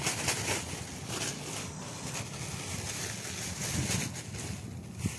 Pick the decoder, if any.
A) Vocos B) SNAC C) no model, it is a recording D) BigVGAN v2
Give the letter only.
C